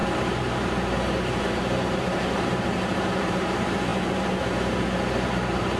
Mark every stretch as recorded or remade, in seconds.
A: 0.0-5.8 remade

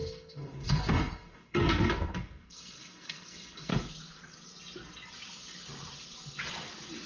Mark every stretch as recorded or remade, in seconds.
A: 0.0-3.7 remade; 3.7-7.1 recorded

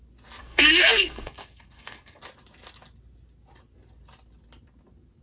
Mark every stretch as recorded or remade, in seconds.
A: 0.0-0.4 recorded; 0.4-2.2 remade; 2.2-5.2 recorded